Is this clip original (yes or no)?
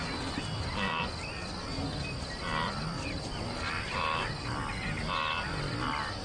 yes